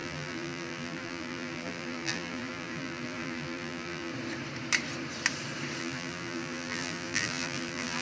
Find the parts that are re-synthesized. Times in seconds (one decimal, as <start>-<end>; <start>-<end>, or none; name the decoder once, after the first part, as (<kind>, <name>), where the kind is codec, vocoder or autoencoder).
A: 0.0-4.1 (vocoder, BigVGAN v2); 5.8-8.0

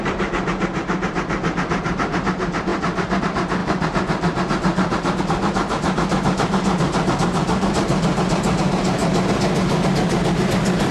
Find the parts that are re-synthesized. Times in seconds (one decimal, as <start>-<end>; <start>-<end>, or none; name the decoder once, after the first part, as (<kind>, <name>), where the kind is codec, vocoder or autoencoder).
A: 0.0-9.0 (vocoder, BigVGAN v2)

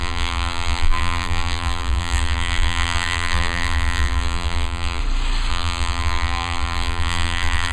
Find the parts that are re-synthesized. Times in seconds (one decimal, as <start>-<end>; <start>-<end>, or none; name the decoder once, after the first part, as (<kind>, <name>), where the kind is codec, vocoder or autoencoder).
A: 0.0-5.0 (vocoder, BigVGAN v2); 5.5-7.7

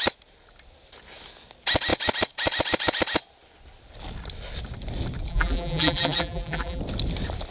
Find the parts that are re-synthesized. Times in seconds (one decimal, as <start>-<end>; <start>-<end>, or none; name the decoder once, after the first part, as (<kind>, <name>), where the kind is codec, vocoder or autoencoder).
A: 5.3-6.8 (vocoder, BigVGAN v2)